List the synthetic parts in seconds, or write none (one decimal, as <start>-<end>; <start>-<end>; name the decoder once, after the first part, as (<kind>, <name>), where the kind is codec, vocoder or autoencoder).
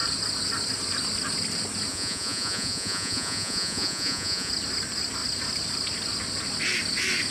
1.9-4.5 (vocoder, Vocos)